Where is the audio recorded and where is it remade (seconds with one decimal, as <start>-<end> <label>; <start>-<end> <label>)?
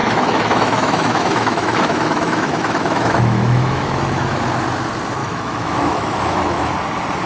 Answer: 0.0-4.4 remade; 4.4-5.2 recorded; 5.2-6.7 remade; 6.7-7.3 recorded